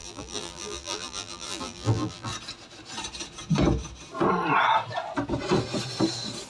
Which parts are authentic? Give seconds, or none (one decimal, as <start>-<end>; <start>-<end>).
2.3-6.5

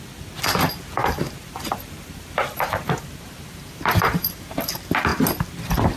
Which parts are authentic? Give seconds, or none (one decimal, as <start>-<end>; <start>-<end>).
0.0-1.0; 4.6-6.0

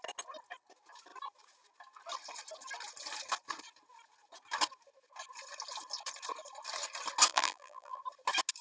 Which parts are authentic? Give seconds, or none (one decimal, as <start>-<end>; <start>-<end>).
0.0-7.3; 8.0-8.6

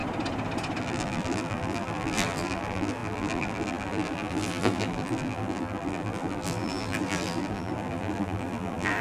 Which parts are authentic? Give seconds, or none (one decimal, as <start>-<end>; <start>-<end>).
0.0-0.8

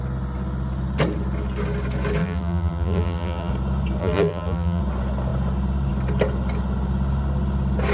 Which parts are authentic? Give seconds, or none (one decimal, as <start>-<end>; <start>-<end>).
0.0-2.2; 3.5-4.0; 4.8-7.9

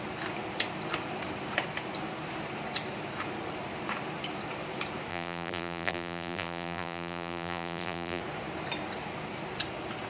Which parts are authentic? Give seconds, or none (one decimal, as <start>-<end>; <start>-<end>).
0.0-5.1; 8.2-10.1

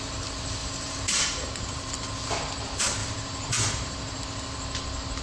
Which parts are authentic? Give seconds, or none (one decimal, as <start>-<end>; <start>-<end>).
0.0-0.6; 1.9-3.0; 4.2-5.2

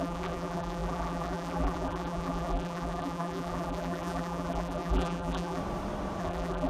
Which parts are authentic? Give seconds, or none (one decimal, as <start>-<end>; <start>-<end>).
5.6-6.2